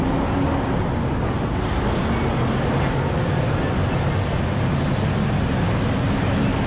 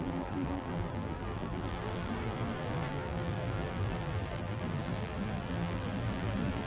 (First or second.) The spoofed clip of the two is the second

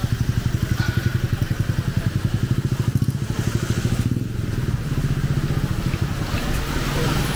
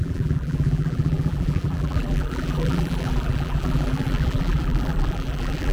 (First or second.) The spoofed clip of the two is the second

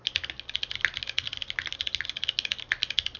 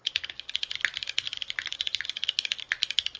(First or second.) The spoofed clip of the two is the second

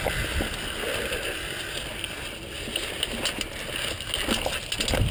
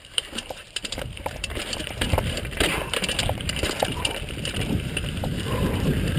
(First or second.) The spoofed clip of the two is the second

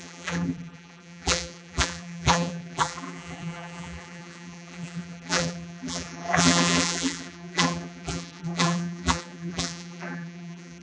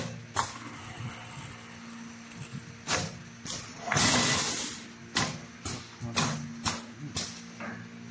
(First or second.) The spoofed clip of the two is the first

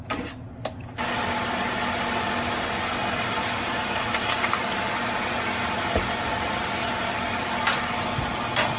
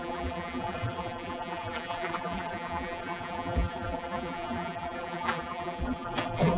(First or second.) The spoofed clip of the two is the second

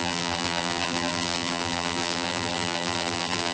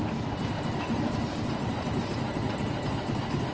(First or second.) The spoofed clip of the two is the first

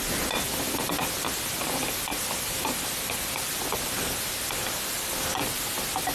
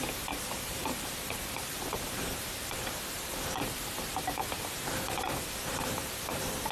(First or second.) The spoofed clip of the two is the second